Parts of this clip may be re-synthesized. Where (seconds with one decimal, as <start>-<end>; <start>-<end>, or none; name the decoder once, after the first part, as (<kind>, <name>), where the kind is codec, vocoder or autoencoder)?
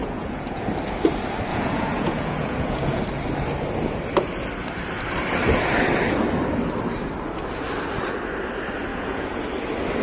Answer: 0.0-0.6 (vocoder, Vocos); 1.5-3.0; 8.9-9.4